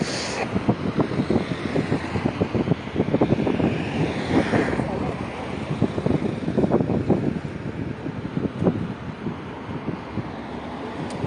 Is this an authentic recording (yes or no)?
yes